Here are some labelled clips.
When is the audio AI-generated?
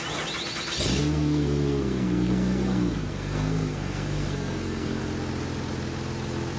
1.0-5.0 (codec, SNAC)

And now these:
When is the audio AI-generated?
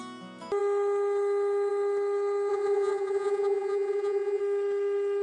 2.5-4.4 (vocoder, Vocos)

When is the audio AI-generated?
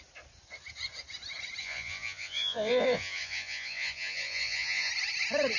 1.6-4.9 (vocoder, Vocos)